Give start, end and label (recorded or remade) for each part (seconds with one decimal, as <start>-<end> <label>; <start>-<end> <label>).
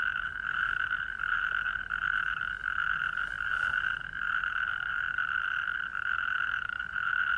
0.0-7.4 recorded